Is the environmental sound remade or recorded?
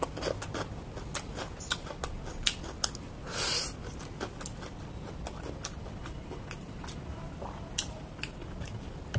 recorded